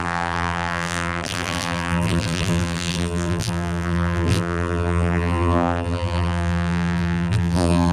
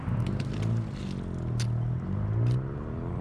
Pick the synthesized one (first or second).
first